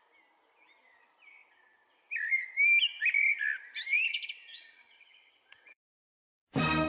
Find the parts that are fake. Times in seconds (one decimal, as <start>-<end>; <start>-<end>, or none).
4.1-6.1